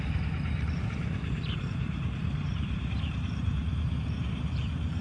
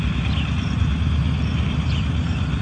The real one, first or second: second